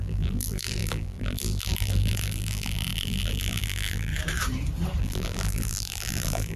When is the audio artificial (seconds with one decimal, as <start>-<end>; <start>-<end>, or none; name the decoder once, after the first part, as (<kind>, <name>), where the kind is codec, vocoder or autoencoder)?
0.0-4.1 (vocoder, BigVGAN v2); 5.0-6.6